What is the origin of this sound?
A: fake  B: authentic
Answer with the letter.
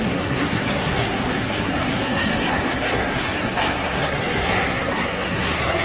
A